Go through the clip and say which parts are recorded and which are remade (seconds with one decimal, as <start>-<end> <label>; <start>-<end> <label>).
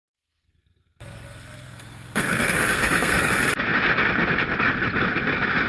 0.0-3.3 remade; 3.3-5.7 recorded